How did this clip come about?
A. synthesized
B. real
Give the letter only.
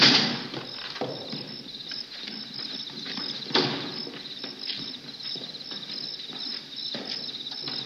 B